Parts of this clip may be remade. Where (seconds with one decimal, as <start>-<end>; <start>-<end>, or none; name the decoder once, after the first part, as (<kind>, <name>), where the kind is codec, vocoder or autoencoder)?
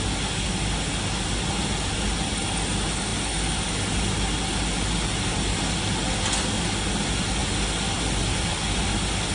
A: none